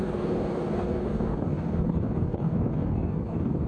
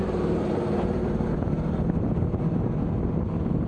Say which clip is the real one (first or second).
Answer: second